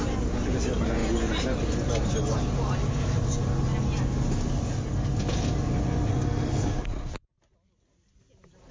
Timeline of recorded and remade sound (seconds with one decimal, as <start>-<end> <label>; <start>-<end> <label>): 0.0-6.1 recorded; 6.1-6.7 remade; 6.7-8.7 recorded